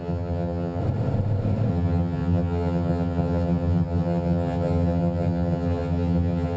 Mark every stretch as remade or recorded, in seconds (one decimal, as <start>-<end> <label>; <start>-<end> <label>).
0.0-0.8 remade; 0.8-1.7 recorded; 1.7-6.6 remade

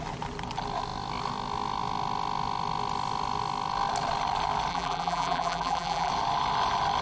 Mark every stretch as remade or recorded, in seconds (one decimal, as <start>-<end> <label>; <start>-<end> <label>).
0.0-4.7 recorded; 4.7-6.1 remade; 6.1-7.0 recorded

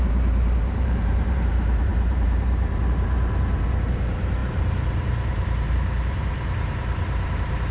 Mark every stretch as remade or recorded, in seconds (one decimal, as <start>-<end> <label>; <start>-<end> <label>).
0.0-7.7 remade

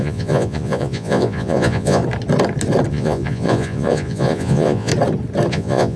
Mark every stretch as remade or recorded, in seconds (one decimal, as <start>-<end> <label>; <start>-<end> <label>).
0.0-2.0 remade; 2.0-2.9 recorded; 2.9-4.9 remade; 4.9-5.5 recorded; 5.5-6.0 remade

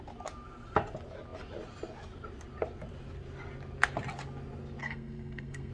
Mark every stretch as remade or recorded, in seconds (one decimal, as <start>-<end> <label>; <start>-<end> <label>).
0.0-4.8 recorded; 4.8-5.7 remade